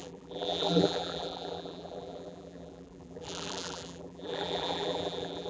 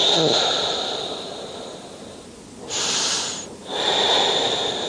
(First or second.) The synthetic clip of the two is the first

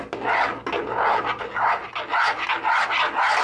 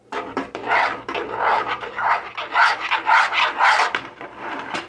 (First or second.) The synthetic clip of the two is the second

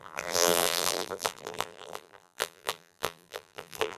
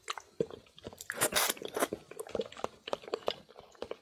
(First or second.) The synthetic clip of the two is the first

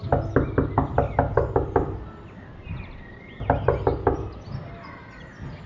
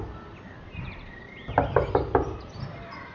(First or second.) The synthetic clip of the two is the second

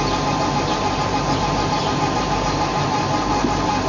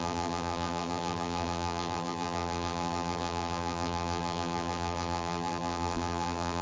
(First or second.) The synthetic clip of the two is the second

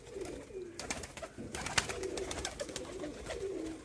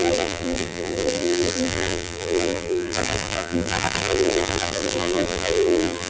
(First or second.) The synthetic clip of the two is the second